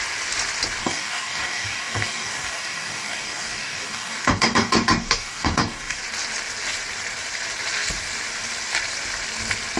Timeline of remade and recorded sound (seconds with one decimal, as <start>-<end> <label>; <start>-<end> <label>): 0.0-0.8 recorded; 0.8-6.0 remade; 6.0-9.8 recorded